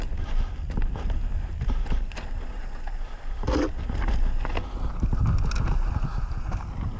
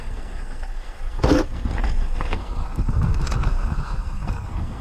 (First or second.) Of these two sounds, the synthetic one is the second